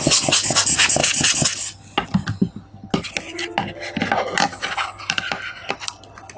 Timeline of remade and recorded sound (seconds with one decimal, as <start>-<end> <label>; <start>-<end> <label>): 0.0-6.4 recorded